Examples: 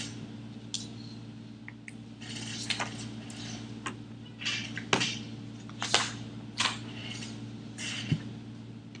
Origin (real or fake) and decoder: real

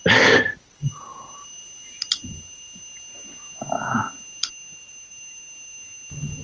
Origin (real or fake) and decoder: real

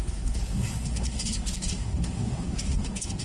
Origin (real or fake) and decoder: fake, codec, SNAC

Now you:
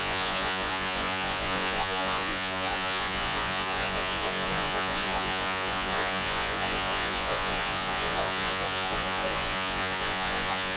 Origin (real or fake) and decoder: fake, vocoder, Vocos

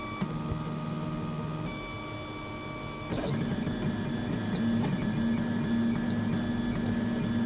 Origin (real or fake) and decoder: real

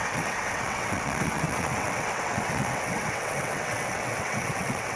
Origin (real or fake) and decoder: fake, vocoder, WaveNeXt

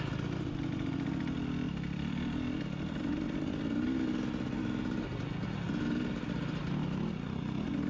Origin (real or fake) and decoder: real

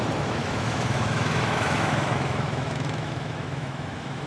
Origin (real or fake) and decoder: fake, autoencoder, DAC-VAE